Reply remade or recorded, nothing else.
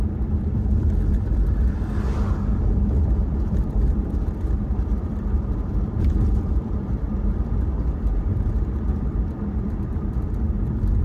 remade